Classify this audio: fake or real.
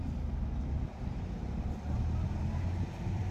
real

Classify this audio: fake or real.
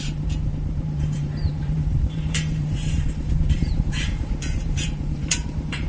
fake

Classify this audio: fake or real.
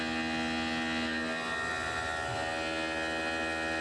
real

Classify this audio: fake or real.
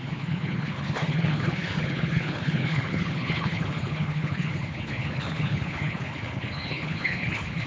fake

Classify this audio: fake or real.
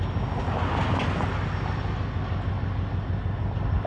real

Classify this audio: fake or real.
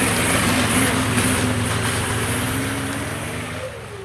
real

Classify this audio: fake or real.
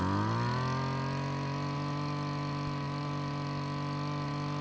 real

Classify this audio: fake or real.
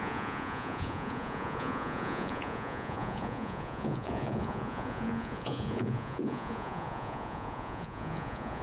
fake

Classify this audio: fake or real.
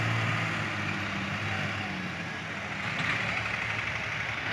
real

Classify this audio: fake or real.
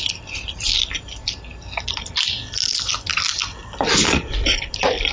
real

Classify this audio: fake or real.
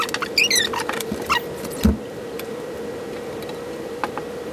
real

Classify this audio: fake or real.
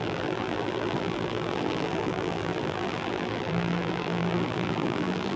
fake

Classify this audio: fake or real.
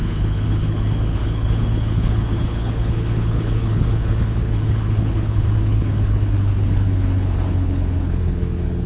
fake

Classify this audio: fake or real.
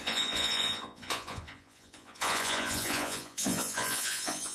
fake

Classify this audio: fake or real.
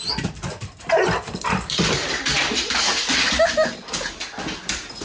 real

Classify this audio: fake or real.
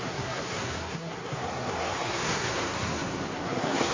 fake